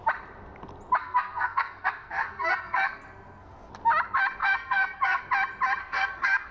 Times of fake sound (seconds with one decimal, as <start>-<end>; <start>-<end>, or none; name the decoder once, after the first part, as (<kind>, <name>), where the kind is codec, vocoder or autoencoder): 1.0-3.7 (codec, SNAC); 4.4-5.2; 5.8-6.5